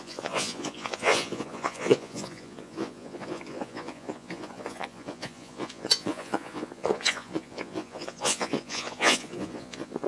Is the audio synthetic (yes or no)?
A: yes